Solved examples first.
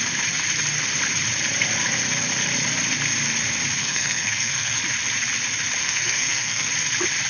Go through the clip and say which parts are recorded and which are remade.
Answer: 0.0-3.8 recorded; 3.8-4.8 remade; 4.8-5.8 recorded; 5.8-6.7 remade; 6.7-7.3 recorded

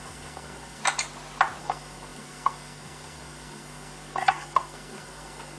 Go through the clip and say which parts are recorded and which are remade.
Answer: 0.0-0.8 remade; 0.8-1.6 recorded; 1.6-5.6 remade

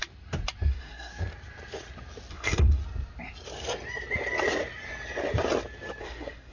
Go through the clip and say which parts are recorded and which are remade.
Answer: 0.0-0.7 recorded; 0.7-1.1 remade; 1.1-2.3 recorded; 2.3-2.8 remade; 2.8-6.0 recorded; 6.0-6.5 remade

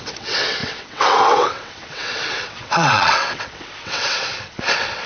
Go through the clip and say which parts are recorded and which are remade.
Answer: 0.0-5.1 remade

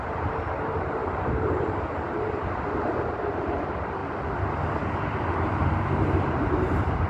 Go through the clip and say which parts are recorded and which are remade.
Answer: 0.0-4.0 remade; 4.0-5.5 recorded; 5.5-7.1 remade

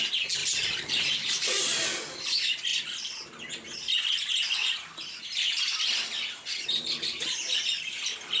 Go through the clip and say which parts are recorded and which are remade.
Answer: 0.0-0.4 recorded; 0.4-1.6 remade; 1.6-8.4 recorded